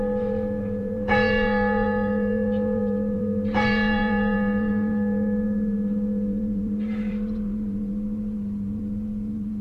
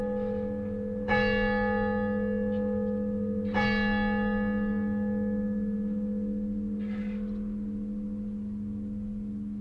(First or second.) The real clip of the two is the second